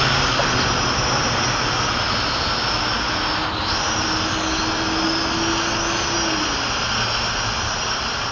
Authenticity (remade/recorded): recorded